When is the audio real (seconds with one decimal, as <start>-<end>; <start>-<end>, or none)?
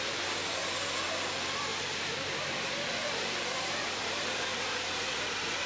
0.6-1.1